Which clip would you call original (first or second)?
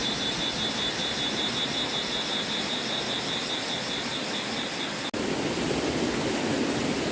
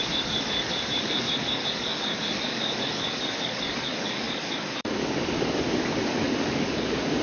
first